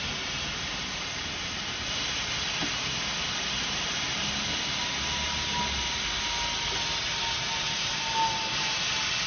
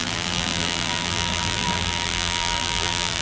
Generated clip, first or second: second